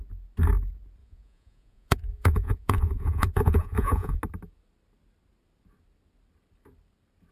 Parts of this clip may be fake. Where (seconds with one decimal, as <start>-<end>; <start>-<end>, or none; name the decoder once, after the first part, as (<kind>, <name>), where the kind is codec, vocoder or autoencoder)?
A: 1.0-4.2 (vocoder, Vocos)